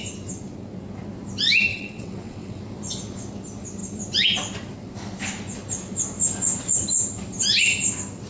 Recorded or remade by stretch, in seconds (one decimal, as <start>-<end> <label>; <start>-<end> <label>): 0.0-1.7 recorded; 1.7-2.6 remade; 2.6-8.3 recorded